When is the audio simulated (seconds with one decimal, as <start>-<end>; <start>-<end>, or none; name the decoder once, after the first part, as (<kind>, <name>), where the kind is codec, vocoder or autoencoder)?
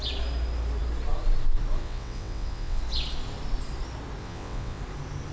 1.8-2.8 (vocoder, WaveNeXt); 4.2-4.8